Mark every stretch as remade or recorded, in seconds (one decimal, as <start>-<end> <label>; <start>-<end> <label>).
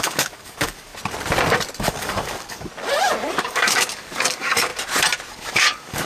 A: 0.0-0.9 remade; 0.9-1.8 recorded; 1.8-2.7 remade; 2.7-3.4 recorded; 3.4-4.7 remade; 4.7-5.3 recorded; 5.3-6.1 remade